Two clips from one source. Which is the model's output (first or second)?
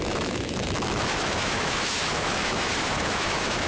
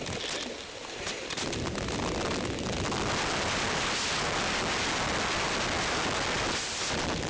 first